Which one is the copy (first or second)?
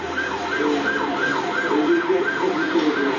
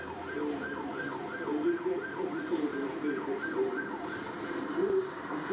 second